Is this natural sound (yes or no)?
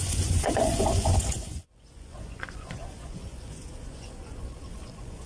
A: no